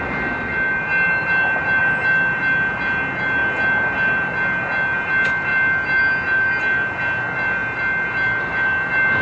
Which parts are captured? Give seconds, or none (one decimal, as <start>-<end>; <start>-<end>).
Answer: 0.0-9.2